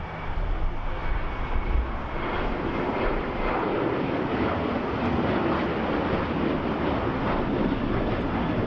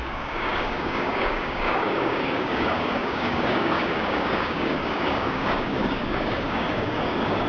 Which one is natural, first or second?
first